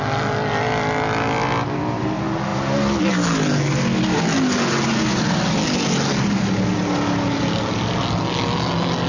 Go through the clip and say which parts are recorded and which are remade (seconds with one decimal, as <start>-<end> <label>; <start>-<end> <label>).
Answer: 0.0-9.1 recorded